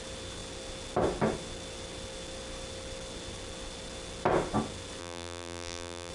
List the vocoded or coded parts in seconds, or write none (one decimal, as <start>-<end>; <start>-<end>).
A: 5.0-6.1